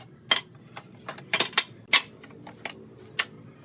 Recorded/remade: recorded